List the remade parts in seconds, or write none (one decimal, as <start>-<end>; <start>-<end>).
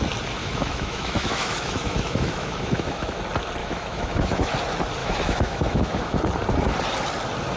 0.4-3.2; 3.6-4.5; 5.0-6.2